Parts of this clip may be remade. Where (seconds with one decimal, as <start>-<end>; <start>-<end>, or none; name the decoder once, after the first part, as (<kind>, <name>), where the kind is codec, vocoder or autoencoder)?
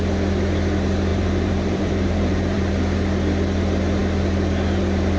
1.1-2.7 (vocoder, BigVGAN v2)